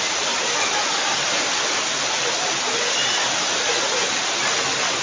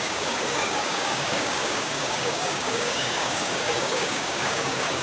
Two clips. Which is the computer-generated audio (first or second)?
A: second